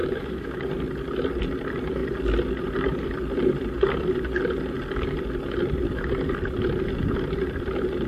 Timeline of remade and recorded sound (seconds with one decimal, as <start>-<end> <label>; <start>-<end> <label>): 0.0-0.6 remade; 0.6-8.1 recorded